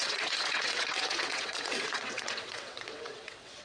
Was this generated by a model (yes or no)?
yes